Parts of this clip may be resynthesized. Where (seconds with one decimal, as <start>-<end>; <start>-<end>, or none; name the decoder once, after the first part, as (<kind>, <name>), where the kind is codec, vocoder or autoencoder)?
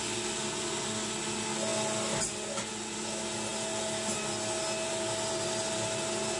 none